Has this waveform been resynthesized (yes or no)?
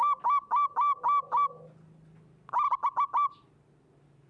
no